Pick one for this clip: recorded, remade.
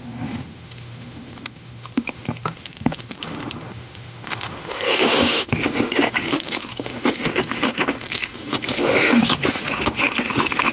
remade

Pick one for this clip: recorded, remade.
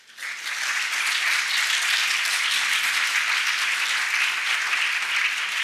recorded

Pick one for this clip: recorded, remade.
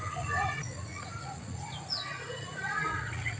remade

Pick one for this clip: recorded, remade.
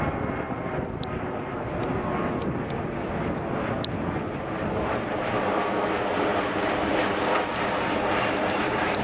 recorded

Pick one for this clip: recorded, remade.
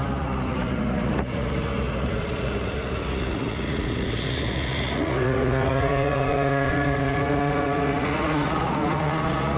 remade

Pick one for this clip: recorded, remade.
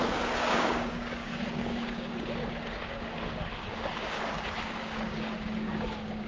remade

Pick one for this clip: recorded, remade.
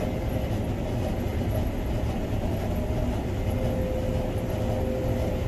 recorded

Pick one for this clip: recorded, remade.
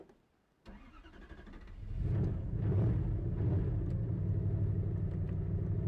recorded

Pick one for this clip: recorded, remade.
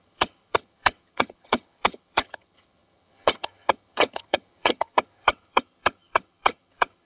remade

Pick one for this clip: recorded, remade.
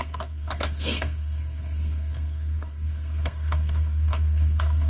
remade